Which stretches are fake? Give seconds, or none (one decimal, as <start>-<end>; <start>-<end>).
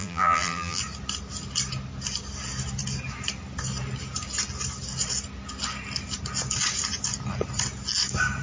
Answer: 0.0-0.8